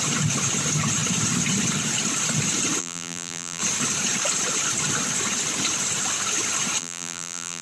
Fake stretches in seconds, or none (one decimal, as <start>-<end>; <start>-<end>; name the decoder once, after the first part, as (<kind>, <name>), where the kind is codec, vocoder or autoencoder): 2.8-3.6 (vocoder, BigVGAN v2); 6.8-7.6

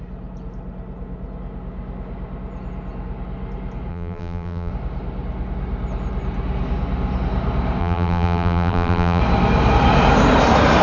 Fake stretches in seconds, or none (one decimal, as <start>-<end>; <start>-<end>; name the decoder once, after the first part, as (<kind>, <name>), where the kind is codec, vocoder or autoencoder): 3.9-4.7 (vocoder, BigVGAN v2); 7.8-9.2

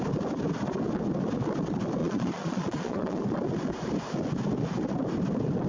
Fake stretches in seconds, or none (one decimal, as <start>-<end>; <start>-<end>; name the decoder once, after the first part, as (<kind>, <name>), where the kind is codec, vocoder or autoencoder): 2.0-3.2 (vocoder, Vocos)

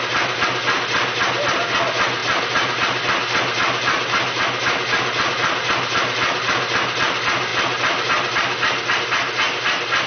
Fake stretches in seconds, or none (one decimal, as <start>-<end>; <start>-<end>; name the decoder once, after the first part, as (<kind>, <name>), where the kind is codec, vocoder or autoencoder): none

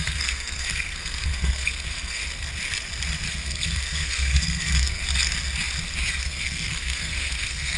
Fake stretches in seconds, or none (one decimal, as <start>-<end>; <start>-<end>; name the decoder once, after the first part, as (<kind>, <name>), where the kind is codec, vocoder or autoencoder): 0.0-2.2 (codec, SNAC); 3.3-5.0; 6.1-7.8

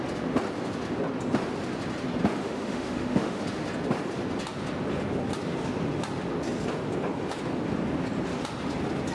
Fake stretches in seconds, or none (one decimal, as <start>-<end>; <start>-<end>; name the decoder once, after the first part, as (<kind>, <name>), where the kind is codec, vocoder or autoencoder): 2.4-3.4 (autoencoder, DAC-VAE)